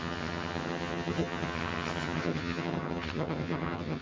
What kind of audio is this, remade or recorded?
remade